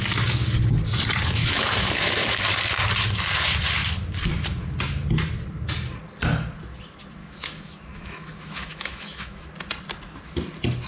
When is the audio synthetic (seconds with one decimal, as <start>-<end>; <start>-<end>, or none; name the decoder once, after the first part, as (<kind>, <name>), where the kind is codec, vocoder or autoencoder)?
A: 1.4-2.4 (autoencoder, DAC-VAE); 7.2-9.5